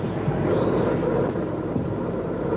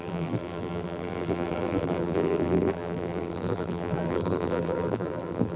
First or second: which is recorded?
first